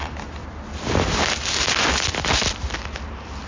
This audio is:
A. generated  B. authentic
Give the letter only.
B